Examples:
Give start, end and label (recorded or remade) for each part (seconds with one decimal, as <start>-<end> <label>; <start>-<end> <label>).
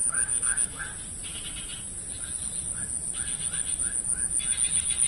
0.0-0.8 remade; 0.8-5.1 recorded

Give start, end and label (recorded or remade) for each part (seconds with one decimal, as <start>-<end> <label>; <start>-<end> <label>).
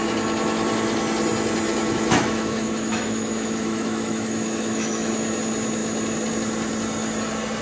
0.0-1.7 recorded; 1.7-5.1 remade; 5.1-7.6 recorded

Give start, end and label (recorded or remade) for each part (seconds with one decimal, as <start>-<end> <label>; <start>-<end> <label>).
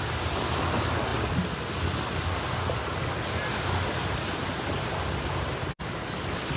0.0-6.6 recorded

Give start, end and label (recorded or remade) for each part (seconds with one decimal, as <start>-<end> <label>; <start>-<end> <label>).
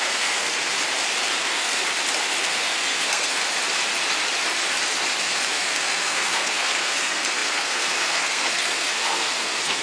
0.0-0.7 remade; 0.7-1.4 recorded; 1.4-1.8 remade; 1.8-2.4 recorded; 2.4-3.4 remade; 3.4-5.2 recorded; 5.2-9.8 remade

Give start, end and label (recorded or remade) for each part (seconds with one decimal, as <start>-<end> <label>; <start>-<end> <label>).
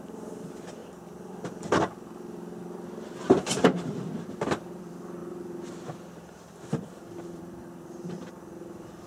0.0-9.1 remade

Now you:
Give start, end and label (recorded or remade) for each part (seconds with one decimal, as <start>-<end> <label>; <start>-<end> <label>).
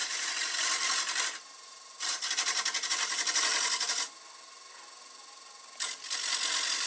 0.0-4.1 remade; 4.1-6.9 recorded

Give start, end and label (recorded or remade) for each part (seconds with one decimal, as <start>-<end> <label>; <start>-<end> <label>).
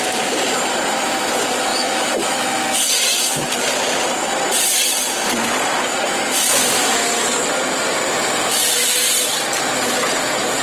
0.0-1.7 recorded; 1.7-2.9 remade; 2.9-10.6 recorded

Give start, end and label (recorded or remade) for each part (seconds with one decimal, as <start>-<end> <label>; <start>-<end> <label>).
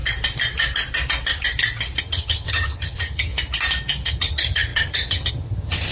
0.0-2.0 recorded; 2.0-3.3 remade; 3.3-4.1 recorded; 4.1-5.9 remade